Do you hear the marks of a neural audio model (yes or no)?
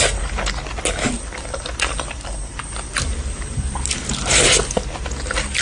no